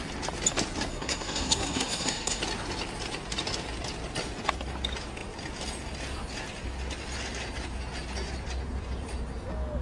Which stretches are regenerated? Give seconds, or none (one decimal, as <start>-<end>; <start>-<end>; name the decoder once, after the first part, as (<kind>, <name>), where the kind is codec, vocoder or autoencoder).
0.9-2.4 (codec, SNAC)